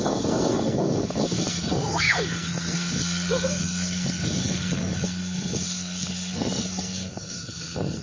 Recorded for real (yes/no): no